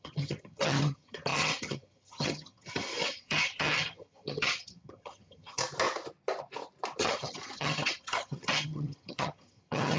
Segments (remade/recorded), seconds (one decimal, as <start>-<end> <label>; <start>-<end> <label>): 0.0-5.6 remade; 5.6-7.0 recorded; 7.0-10.0 remade